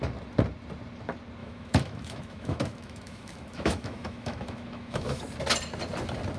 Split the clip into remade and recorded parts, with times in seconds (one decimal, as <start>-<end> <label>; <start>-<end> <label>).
0.0-1.4 recorded; 1.4-5.2 remade; 5.2-6.4 recorded